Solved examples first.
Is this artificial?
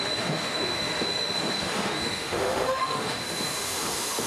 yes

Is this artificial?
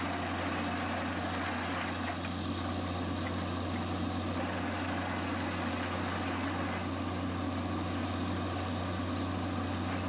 no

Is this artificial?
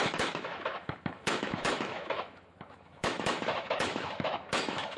yes